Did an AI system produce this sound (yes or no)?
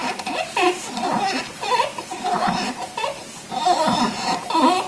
yes